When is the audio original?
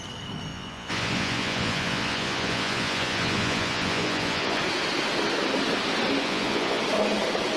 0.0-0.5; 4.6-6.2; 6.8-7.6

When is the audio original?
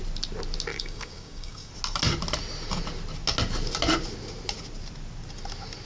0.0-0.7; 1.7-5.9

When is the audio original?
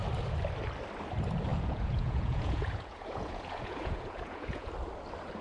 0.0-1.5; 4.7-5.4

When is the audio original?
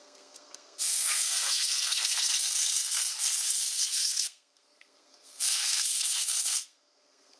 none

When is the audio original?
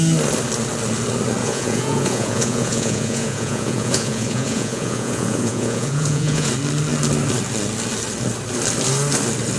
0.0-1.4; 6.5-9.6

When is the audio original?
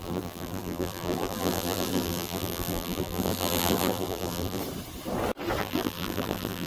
4.6-5.6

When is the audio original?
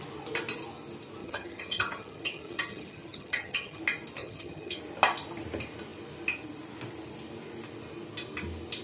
0.0-1.2; 3.8-4.2; 4.8-8.8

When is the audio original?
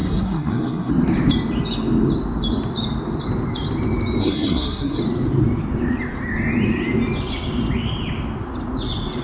0.9-4.2; 5.0-9.2